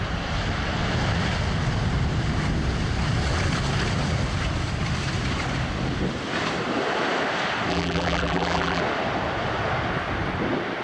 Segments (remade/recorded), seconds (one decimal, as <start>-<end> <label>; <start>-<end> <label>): 0.0-7.7 recorded; 7.7-8.8 remade; 8.8-10.8 recorded